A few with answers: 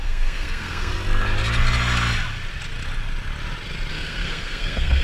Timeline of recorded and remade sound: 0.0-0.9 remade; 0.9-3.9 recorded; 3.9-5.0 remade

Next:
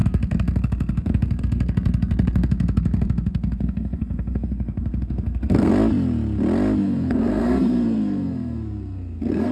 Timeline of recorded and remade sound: 0.0-5.7 remade; 5.7-6.8 recorded; 6.8-9.5 remade

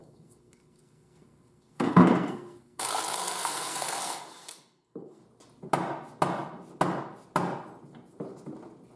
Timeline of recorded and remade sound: 0.0-5.2 remade; 5.2-9.0 recorded

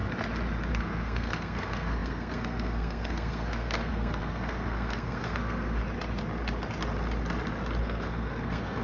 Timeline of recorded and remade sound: 0.0-0.7 recorded; 0.7-5.8 remade; 5.8-7.8 recorded; 7.8-8.8 remade

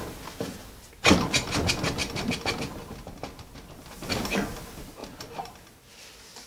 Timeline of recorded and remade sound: 0.0-6.5 recorded

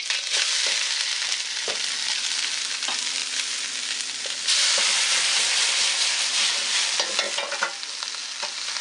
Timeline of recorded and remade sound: 0.0-8.8 recorded

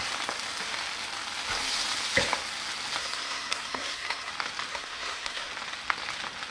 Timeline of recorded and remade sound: 0.0-3.0 recorded; 3.0-4.3 remade; 4.3-4.7 recorded; 4.7-5.5 remade; 5.5-6.5 recorded

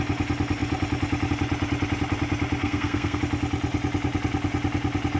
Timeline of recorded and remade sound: 0.0-2.6 recorded; 2.6-3.2 remade; 3.2-5.2 recorded